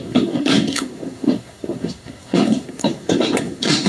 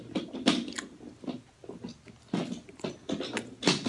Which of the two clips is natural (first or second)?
second